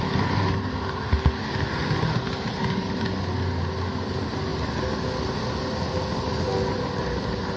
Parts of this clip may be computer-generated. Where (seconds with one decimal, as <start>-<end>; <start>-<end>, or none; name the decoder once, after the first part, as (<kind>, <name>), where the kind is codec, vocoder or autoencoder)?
none